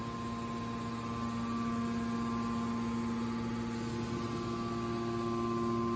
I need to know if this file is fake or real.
real